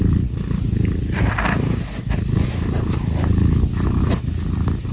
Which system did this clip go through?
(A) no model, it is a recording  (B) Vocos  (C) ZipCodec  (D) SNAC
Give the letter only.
A